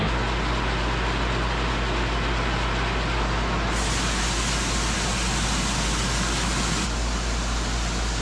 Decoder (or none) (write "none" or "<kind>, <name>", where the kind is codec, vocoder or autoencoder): none